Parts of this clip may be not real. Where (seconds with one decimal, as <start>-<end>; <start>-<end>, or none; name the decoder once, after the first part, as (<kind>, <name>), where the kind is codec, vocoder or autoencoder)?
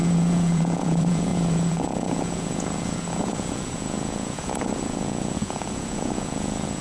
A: 0.0-6.8 (vocoder, Vocos)